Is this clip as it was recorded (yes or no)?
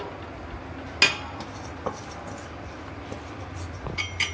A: yes